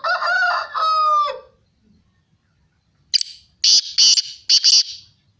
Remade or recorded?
recorded